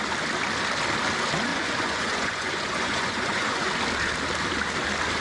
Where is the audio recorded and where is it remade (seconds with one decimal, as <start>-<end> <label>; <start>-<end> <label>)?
0.0-1.5 recorded; 1.5-3.7 remade; 3.7-5.2 recorded